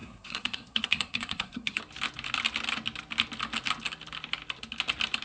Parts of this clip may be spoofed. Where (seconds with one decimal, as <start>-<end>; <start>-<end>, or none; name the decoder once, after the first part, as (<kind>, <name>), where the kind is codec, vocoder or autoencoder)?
0.0-1.8 (codec, SNAC)